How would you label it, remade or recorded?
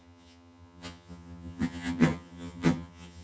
remade